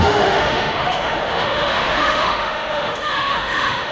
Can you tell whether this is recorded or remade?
remade